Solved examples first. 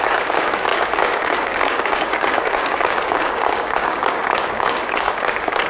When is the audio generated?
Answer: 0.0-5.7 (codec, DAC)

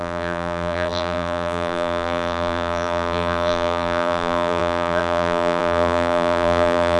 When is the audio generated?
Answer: 0.0-7.0 (vocoder, BigVGAN v2)

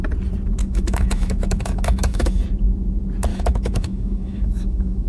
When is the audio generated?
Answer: 0.6-2.4 (autoencoder, DAC-VAE); 3.3-5.1

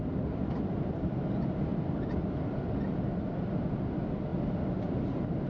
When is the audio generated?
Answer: 0.4-1.1 (vocoder, BigVGAN v2); 1.7-3.6

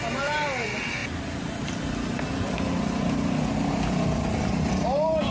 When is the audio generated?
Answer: none